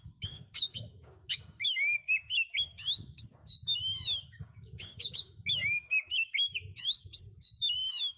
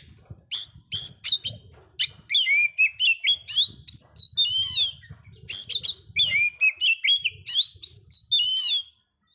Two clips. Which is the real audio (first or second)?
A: second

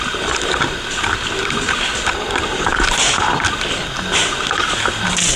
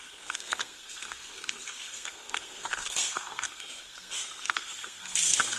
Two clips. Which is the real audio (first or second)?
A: first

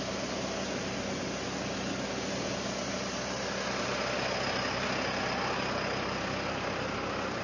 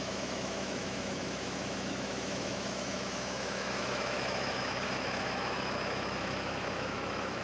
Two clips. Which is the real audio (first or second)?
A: first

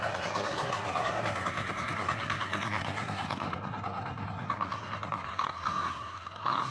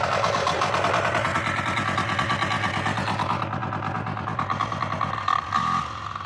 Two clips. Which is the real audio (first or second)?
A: second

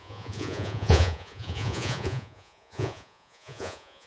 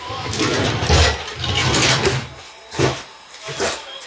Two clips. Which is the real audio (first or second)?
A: second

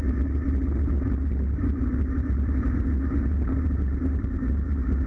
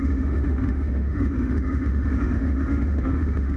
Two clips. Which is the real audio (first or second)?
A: first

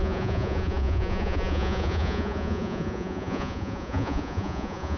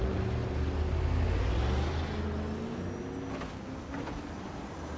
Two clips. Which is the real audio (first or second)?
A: second